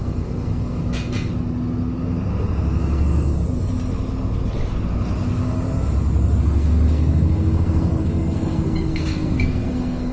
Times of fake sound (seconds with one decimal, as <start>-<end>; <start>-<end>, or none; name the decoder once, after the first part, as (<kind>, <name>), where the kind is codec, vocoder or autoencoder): 0.0-1.3 (codec, SNAC); 2.8-3.3; 6.4-10.1

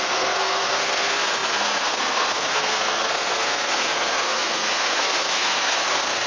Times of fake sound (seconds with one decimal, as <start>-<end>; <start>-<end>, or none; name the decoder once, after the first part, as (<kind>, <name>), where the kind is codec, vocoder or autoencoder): 0.0-6.3 (codec, SNAC)

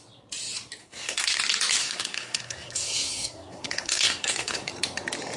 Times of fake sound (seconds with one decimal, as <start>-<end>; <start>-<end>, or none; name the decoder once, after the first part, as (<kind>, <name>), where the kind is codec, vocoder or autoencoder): 0.8-1.4 (codec, SNAC); 1.8-4.7

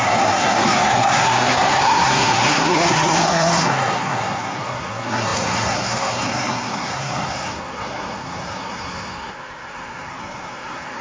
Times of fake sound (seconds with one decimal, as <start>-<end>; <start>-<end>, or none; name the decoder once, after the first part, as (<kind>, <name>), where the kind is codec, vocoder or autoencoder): 0.0-11.0 (codec, SNAC)

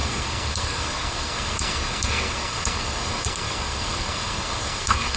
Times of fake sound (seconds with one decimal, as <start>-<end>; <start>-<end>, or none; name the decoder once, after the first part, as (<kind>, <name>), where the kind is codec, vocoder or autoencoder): 0.0-5.2 (codec, SNAC)

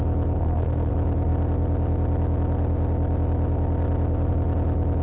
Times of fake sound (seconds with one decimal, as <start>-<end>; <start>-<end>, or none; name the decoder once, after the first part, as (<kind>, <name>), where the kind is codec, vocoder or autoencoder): 0.4-0.9 (codec, SNAC)